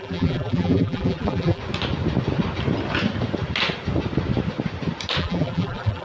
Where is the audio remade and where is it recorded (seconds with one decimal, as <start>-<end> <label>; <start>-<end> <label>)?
0.0-1.6 remade; 1.6-5.2 recorded; 5.2-6.0 remade